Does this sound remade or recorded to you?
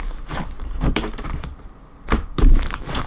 remade